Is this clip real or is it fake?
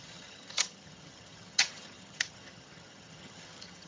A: fake